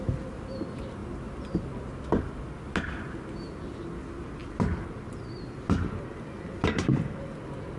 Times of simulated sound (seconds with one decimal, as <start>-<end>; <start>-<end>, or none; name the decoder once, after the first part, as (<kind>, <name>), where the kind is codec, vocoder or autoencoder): 1.0-1.8 (vocoder, BigVGAN v2); 4.4-7.8

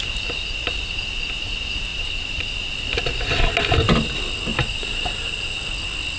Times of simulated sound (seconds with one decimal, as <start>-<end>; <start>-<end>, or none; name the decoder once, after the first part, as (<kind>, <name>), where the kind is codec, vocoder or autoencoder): 1.9-2.6 (vocoder, BigVGAN v2); 4.5-5.6

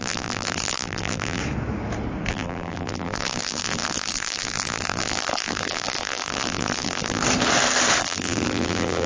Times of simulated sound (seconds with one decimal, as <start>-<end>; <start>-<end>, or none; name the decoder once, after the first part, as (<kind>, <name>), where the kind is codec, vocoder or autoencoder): 0.0-1.4 (vocoder, BigVGAN v2); 2.3-7.2; 8.0-9.1

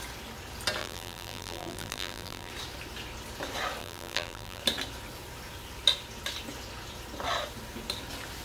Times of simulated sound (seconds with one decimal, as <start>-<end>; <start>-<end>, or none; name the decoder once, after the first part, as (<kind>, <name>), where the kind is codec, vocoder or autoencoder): 0.8-2.5 (vocoder, BigVGAN v2); 3.8-4.6

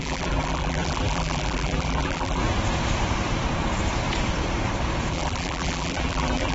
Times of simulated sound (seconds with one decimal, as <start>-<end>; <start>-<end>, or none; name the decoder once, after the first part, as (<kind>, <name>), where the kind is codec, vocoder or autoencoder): 0.0-2.4 (vocoder, BigVGAN v2); 5.1-6.5